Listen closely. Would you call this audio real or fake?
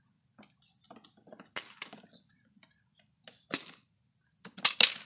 real